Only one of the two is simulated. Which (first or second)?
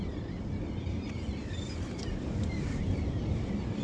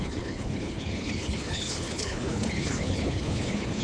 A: second